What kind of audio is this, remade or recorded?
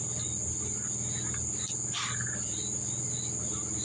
recorded